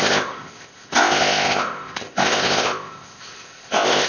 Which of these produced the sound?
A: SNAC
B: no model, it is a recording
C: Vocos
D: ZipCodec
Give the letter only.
D